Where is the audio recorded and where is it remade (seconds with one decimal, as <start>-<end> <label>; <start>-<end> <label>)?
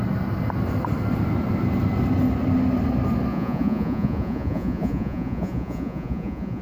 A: 0.0-3.3 recorded; 3.3-6.6 remade